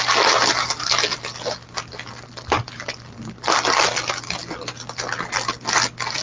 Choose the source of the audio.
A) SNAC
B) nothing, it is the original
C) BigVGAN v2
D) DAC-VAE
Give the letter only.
B